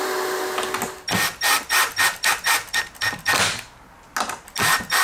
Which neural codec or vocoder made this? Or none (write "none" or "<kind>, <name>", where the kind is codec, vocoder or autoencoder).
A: none